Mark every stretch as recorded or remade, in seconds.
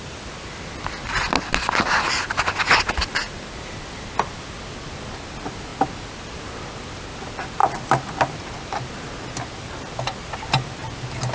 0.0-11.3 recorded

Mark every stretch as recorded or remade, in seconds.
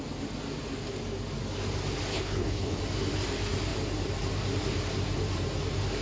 0.0-2.1 recorded; 2.1-2.8 remade; 2.8-6.0 recorded